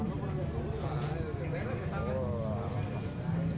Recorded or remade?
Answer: recorded